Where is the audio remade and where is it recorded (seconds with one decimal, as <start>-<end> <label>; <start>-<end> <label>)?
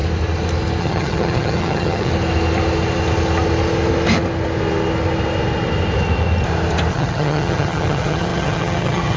0.0-0.8 recorded; 0.8-2.1 remade; 2.1-6.9 recorded; 6.9-9.2 remade